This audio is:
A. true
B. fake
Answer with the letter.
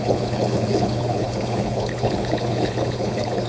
B